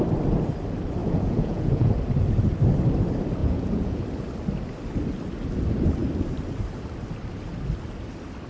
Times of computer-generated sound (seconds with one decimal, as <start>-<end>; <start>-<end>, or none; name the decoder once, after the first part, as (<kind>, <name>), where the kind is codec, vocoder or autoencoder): 1.0-1.9 (vocoder, Vocos); 3.4-4.0